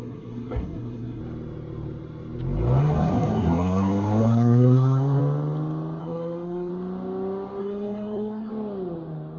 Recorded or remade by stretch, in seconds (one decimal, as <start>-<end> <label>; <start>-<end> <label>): 0.0-1.2 remade; 1.2-2.8 recorded; 2.8-5.2 remade; 5.2-6.0 recorded; 6.0-6.7 remade; 6.7-7.6 recorded; 7.6-8.5 remade; 8.5-9.4 recorded